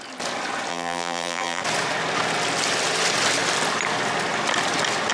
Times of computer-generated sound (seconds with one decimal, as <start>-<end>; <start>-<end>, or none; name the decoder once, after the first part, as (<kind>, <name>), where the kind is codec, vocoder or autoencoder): 0.7-1.6 (vocoder, BigVGAN v2)